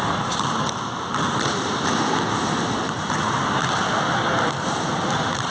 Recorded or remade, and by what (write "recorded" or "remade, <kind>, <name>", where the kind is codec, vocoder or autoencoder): recorded